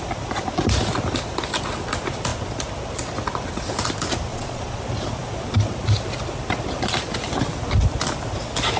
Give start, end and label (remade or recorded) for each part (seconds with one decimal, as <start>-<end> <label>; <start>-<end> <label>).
0.0-4.3 recorded; 4.3-4.8 remade; 4.8-8.8 recorded